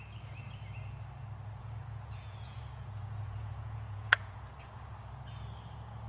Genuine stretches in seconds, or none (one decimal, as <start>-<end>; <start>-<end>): 0.0-1.6; 5.0-6.1